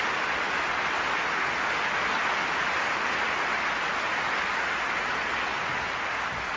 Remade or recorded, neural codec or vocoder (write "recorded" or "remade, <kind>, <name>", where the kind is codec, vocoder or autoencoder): recorded